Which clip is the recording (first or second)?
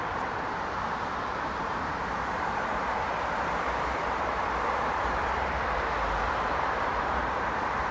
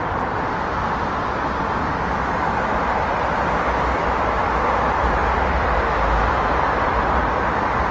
second